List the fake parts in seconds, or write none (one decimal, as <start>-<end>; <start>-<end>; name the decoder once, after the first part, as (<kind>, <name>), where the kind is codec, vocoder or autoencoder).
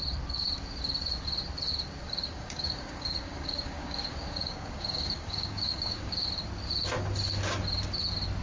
2.0-6.2 (codec, DAC)